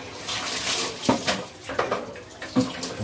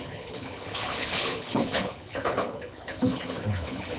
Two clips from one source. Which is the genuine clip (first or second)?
first